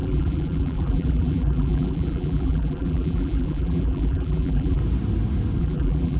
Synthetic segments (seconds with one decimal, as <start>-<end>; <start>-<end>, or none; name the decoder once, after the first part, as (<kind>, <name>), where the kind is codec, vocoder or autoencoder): 0.0-4.8 (vocoder, BigVGAN v2); 5.6-6.2